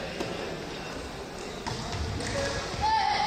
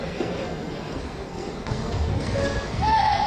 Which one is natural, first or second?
first